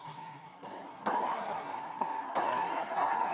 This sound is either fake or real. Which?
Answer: fake